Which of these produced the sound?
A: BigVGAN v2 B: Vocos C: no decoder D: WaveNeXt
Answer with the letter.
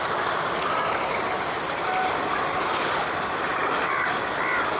A